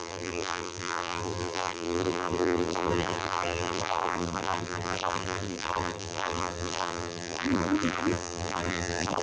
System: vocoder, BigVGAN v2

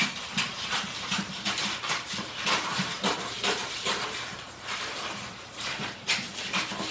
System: vocoder, BigVGAN v2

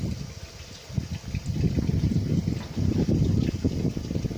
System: none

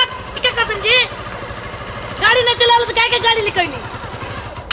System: none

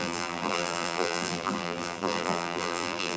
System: vocoder, BigVGAN v2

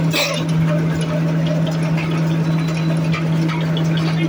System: none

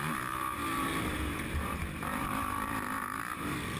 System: vocoder, BigVGAN v2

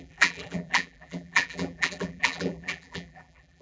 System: vocoder, BigVGAN v2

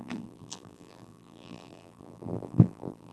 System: vocoder, BigVGAN v2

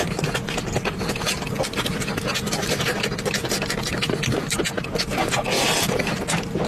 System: none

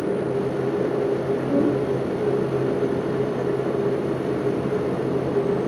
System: none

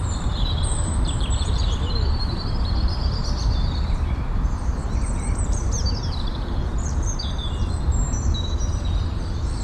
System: vocoder, BigVGAN v2